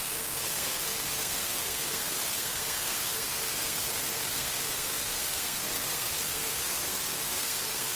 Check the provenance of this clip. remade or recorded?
remade